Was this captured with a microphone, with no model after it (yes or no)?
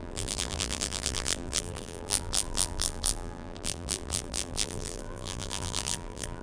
no